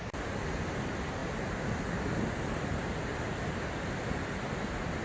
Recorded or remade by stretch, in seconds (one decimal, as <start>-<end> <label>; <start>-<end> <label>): 0.0-5.0 recorded